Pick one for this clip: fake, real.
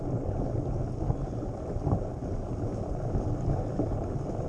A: real